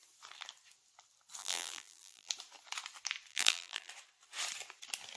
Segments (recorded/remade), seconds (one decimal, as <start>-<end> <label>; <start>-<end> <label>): 0.0-1.4 recorded; 1.4-2.3 remade; 2.3-3.3 recorded; 3.3-3.9 remade; 3.9-5.2 recorded